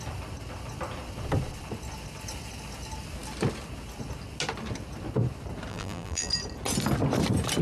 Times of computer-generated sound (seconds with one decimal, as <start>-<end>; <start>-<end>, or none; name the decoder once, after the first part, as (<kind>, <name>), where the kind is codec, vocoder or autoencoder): 5.7-6.3 (vocoder, BigVGAN v2)

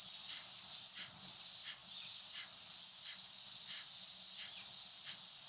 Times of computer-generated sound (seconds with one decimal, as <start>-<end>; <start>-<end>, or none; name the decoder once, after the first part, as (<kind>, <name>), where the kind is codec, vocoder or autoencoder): 0.0-1.8 (vocoder, BigVGAN v2); 5.1-5.5

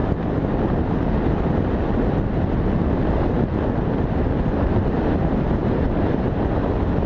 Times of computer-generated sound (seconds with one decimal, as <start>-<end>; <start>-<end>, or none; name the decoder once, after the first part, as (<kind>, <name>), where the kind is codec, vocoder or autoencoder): 4.3-7.1 (vocoder, BigVGAN v2)

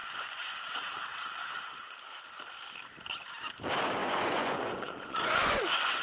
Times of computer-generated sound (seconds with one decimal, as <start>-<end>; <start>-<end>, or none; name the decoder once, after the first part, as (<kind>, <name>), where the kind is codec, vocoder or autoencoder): 0.0-0.6 (vocoder, Vocos); 4.0-6.0